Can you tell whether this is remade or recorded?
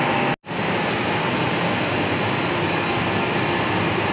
recorded